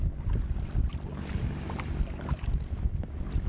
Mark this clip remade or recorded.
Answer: recorded